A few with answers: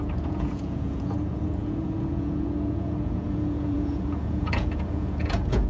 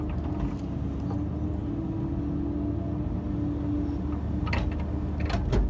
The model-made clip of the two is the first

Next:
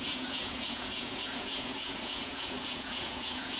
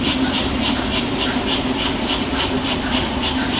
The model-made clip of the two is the first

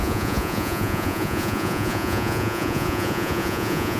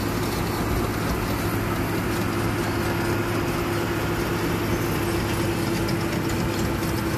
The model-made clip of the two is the first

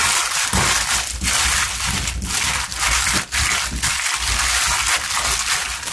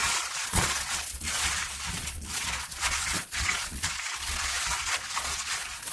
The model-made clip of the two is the second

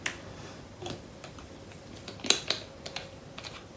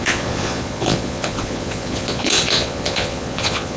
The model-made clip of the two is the second